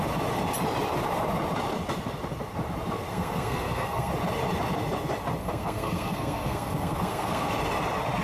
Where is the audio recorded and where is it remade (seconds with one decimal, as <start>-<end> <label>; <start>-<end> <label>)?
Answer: 0.0-3.1 recorded; 3.1-4.1 remade; 4.1-5.4 recorded; 5.4-7.5 remade; 7.5-8.2 recorded